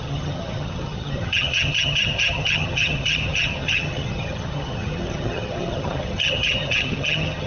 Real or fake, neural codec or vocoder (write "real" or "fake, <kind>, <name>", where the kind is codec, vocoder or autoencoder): fake, vocoder, HiFi-GAN